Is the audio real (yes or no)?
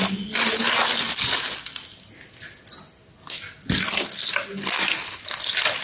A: yes